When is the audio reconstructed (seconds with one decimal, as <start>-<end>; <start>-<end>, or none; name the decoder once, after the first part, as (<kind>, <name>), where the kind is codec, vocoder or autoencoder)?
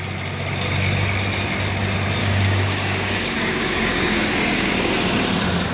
2.2-4.7 (codec, DAC)